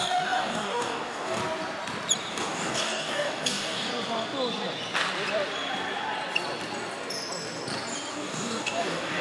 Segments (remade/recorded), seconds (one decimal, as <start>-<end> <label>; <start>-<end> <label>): 0.0-1.4 remade; 1.4-2.3 recorded; 2.3-3.9 remade; 3.9-8.1 recorded; 8.1-9.2 remade